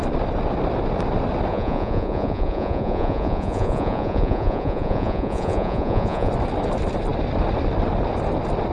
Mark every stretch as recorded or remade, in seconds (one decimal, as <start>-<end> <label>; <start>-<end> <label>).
0.0-1.5 recorded; 1.5-6.3 remade; 6.3-8.7 recorded